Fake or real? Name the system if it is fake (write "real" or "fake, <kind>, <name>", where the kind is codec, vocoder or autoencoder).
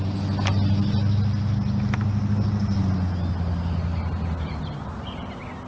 real